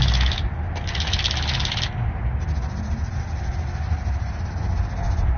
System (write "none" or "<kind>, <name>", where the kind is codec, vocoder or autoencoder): none